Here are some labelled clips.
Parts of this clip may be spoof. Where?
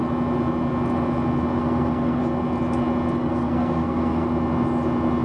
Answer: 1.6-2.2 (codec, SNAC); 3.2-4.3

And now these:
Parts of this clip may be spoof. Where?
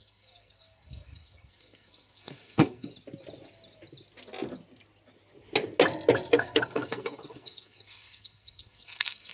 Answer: 0.0-2.9 (codec, SNAC); 6.3-9.3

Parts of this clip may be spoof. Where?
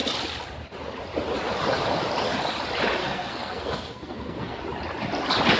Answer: 3.0-4.6 (codec, SNAC)